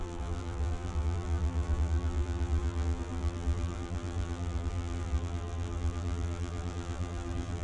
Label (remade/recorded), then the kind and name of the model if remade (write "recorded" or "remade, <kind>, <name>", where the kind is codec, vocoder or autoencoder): remade, vocoder, BigVGAN v2